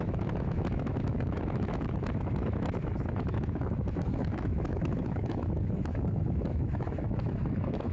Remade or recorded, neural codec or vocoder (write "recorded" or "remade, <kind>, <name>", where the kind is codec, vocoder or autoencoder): remade, autoencoder, DAC-VAE